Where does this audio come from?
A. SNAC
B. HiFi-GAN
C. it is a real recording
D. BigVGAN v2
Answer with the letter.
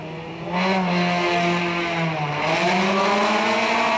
C